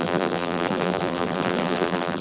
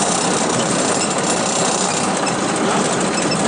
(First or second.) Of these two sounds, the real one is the second